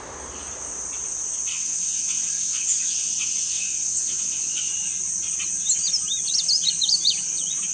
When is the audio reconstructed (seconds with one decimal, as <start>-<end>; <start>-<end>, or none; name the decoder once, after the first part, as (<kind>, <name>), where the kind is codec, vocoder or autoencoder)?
1.5-4.7 (vocoder, WaveNeXt)